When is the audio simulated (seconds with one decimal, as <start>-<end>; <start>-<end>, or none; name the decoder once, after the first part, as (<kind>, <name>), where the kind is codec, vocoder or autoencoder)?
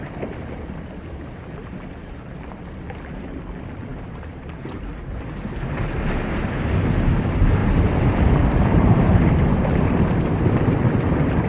2.0-2.6 (vocoder, BigVGAN v2); 3.9-4.8; 7.6-9.3